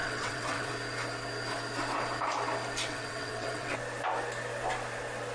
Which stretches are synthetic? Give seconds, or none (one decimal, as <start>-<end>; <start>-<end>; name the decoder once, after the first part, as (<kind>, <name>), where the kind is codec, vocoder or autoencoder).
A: 0.0-0.7 (vocoder, WaveNeXt); 2.8-3.8